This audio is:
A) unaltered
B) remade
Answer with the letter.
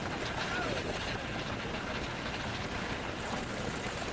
A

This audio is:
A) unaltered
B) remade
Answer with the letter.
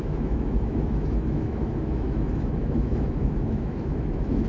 B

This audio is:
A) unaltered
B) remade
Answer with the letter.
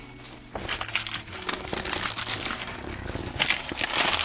A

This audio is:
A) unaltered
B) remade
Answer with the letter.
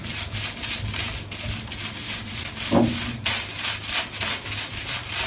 A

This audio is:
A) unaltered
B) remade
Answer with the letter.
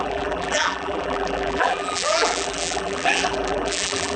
B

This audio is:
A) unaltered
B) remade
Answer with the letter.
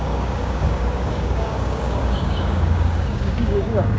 B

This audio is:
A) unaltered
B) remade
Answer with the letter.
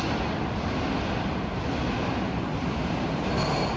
A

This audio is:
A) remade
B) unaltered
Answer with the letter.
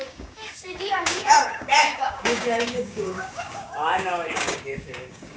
A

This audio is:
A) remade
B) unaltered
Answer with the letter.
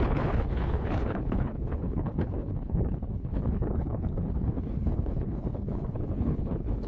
A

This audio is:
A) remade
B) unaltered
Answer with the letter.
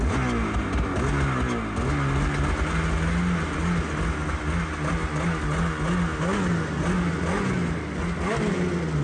B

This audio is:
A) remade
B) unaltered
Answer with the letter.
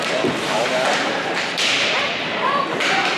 A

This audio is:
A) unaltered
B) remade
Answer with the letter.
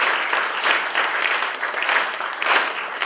A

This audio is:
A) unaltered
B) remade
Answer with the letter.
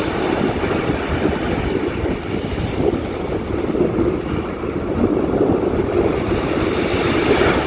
A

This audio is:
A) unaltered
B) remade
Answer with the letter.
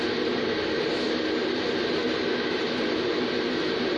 A